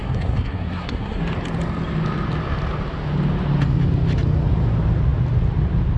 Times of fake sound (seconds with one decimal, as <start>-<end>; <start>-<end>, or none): 0.0-1.2